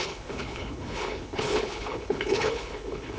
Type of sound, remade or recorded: remade